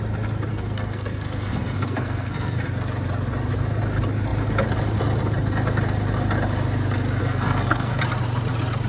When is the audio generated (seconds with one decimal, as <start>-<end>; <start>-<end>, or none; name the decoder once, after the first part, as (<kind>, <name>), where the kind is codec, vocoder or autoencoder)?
0.5-2.6 (codec, SNAC); 7.2-8.0